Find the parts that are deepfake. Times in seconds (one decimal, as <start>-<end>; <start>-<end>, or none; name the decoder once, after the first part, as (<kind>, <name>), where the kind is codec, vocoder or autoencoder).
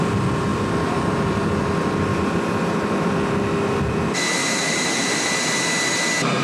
0.5-1.6 (vocoder, BigVGAN v2); 4.4-5.2